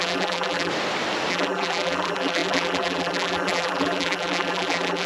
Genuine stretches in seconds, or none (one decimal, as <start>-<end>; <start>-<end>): 0.7-1.3